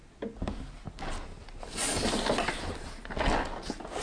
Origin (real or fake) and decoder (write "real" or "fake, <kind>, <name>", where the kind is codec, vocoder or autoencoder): real